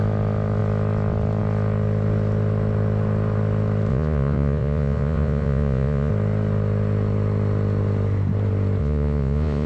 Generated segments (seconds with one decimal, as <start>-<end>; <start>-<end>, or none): 3.9-6.1; 8.8-9.7